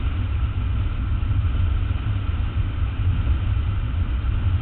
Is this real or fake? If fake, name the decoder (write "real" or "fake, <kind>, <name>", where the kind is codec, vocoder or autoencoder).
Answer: real